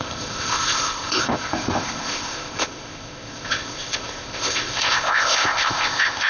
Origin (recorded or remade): remade